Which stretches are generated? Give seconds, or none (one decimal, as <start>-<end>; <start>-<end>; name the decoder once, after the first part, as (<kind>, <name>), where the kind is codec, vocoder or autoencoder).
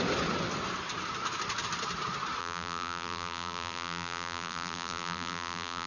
2.4-5.9 (vocoder, BigVGAN v2)